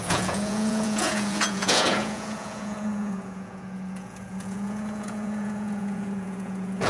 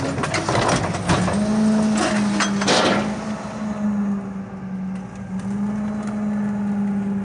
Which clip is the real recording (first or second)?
second